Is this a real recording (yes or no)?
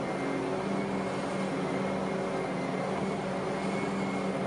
yes